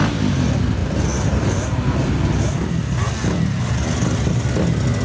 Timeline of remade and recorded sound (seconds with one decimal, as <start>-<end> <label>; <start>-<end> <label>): 0.0-5.0 recorded

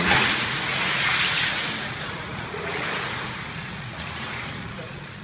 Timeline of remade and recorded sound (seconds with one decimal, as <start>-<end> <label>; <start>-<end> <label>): 0.0-5.2 remade